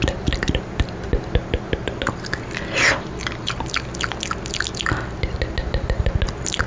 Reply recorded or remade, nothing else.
recorded